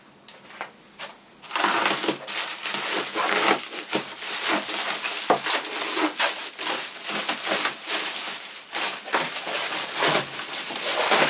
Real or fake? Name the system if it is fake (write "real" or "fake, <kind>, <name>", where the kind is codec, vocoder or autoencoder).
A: real